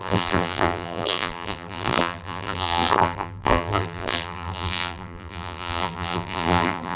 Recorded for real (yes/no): no